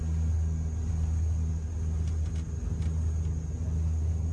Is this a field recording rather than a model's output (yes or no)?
yes